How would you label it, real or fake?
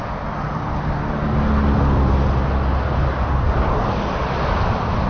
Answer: real